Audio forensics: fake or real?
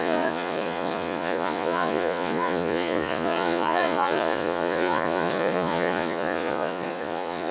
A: fake